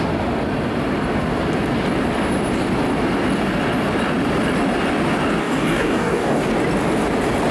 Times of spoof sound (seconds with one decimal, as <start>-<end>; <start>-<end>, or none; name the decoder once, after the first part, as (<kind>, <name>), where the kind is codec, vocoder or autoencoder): 5.4-6.4 (codec, DAC)